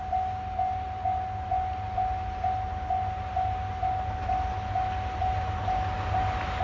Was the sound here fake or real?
real